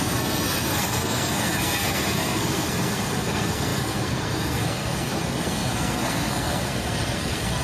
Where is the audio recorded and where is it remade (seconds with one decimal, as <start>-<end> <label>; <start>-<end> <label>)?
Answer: 0.0-7.6 remade